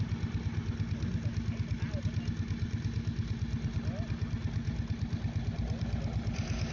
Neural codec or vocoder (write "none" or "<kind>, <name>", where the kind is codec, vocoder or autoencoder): none